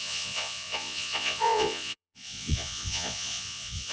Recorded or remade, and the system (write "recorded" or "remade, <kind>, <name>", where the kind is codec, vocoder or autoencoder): remade, vocoder, Vocos